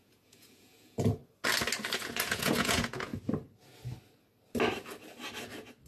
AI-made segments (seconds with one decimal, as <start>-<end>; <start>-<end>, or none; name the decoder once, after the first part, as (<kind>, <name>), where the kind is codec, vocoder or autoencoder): 0.0-1.2 (vocoder, Vocos); 2.0-3.1